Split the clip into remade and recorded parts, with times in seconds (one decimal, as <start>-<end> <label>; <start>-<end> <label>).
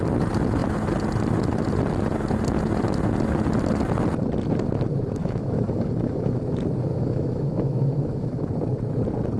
0.0-5.2 recorded; 5.2-6.4 remade; 6.4-6.9 recorded; 6.9-8.5 remade; 8.5-9.4 recorded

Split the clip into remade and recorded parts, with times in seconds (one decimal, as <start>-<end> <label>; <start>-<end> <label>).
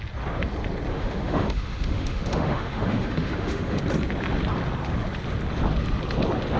0.0-0.9 recorded; 0.9-3.8 remade; 3.8-6.6 recorded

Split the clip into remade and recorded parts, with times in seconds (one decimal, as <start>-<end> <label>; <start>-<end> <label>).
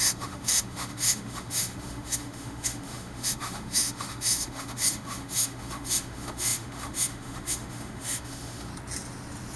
0.0-8.7 remade; 8.7-9.6 recorded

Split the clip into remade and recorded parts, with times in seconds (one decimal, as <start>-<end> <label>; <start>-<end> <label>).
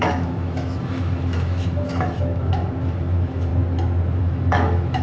0.0-3.5 remade; 3.5-4.2 recorded; 4.2-5.0 remade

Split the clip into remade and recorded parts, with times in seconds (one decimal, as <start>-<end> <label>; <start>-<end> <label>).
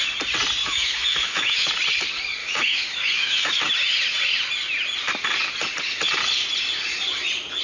0.0-0.6 recorded; 0.6-1.7 remade; 1.7-2.4 recorded; 2.4-3.6 remade; 3.6-7.6 recorded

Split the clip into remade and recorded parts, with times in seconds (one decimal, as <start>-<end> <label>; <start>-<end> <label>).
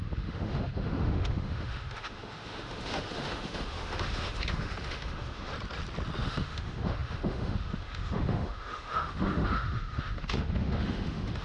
0.0-5.5 remade; 5.5-6.2 recorded; 6.2-11.4 remade